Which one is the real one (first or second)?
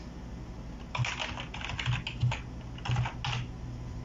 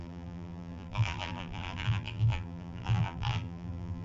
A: first